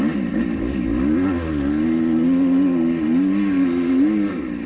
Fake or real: real